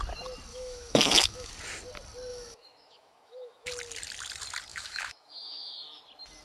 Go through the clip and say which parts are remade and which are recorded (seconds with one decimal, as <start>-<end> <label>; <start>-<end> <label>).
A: 0.0-0.5 recorded; 0.5-1.5 remade; 1.5-2.3 recorded; 2.3-3.7 remade; 3.7-4.7 recorded; 4.7-6.0 remade; 6.0-6.4 recorded